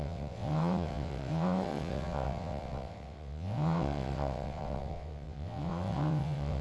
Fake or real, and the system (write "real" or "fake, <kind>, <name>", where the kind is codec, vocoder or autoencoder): fake, vocoder, WaveNeXt